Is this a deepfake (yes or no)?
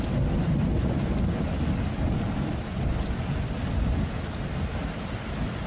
no